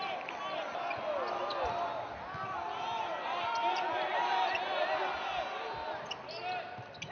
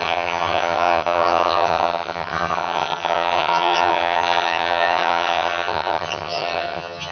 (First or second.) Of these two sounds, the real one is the first